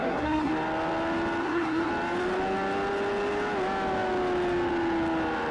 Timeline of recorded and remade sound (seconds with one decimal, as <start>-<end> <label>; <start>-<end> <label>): 0.0-0.5 remade; 0.5-1.4 recorded; 1.4-1.9 remade; 1.9-5.5 recorded